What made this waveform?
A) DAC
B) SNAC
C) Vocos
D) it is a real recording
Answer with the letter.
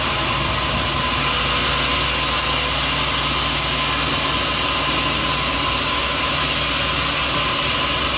D